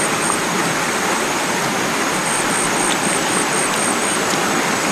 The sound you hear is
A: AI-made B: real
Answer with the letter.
B